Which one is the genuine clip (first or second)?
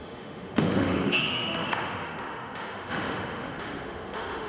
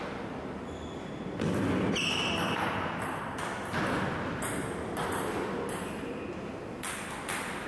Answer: second